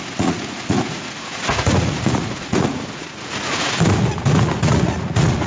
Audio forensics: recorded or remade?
remade